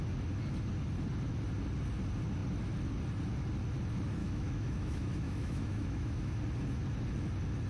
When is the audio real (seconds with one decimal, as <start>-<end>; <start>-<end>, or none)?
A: 0.0-4.2; 6.3-7.7